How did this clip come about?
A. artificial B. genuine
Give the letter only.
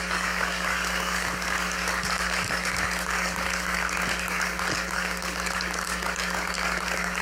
A